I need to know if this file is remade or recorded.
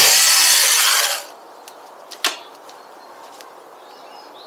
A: recorded